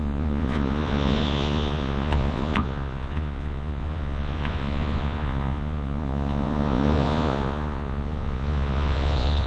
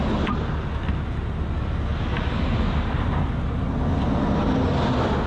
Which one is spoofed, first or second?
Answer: first